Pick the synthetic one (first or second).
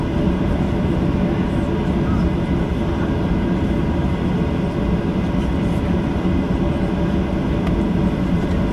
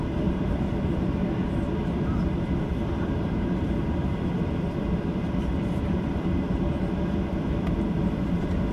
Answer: second